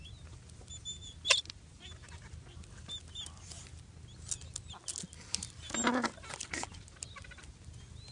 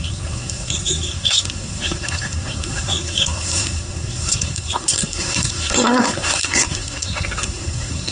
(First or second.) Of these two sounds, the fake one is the second